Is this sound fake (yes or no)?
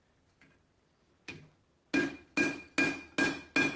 no